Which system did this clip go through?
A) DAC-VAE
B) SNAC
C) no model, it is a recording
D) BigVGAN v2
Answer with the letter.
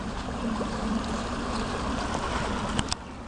C